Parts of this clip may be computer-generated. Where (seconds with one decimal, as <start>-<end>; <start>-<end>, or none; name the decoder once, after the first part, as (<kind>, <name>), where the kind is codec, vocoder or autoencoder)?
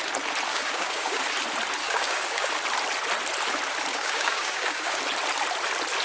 0.5-1.2 (codec, DAC); 1.8-2.5; 3.9-5.0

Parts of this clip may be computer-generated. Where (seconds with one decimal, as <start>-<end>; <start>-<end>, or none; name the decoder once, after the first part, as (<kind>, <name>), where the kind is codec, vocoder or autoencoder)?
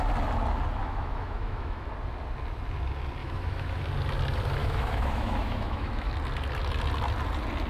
0.8-1.9 (autoencoder, DAC-VAE); 3.2-3.8; 4.6-6.1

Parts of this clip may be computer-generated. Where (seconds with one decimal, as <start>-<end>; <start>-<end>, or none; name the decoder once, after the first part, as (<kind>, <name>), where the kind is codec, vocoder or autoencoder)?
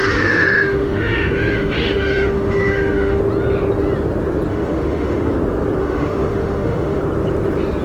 0.0-3.2 (autoencoder, DAC-VAE); 4.5-5.3; 5.8-7.0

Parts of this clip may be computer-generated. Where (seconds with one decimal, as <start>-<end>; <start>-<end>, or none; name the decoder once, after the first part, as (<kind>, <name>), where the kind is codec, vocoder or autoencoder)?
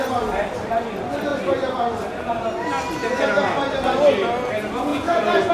4.9-5.5 (vocoder, Vocos)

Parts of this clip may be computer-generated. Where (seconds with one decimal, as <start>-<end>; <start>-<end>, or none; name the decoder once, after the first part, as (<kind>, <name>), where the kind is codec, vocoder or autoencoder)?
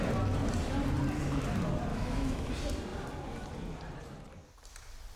1.9-2.5 (autoencoder, DAC-VAE)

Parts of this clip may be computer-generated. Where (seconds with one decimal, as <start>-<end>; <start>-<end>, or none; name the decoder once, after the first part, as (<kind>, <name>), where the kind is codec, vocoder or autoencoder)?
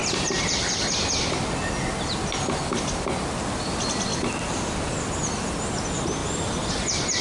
0.0-0.7 (vocoder, BigVGAN v2)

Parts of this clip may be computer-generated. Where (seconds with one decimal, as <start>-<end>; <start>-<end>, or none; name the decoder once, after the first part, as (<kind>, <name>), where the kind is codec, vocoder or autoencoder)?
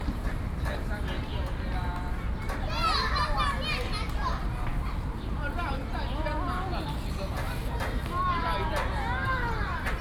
none